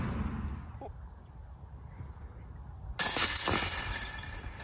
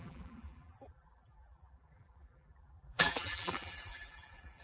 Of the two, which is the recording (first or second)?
first